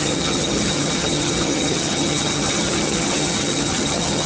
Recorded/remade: remade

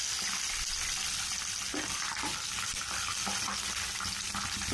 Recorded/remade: recorded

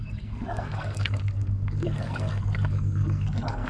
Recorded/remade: remade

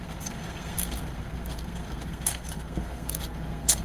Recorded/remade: remade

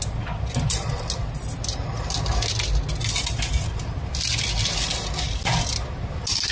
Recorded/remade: recorded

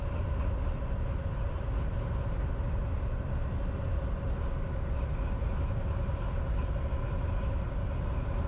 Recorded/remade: recorded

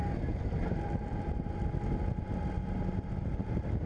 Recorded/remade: recorded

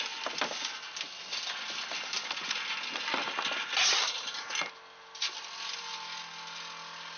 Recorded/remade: recorded